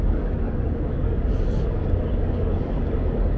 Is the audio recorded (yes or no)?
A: no